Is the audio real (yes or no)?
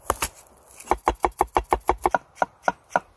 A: yes